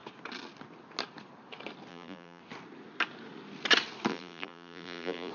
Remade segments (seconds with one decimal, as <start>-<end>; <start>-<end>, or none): 1.9-2.4; 4.1-5.3